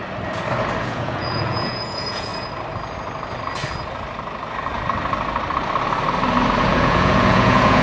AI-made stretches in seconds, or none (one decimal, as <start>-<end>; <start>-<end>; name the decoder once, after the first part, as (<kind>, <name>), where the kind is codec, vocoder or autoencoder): 0.8-2.3 (vocoder, Vocos); 6.6-7.8